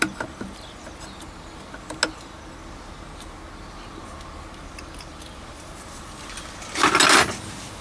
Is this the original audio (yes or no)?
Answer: yes